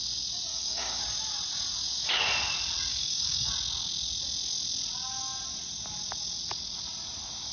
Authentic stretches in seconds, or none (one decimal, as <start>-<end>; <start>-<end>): 0.0-0.5; 1.0-2.9; 3.5-7.5